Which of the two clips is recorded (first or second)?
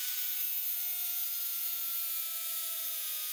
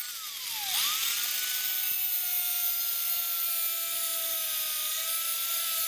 second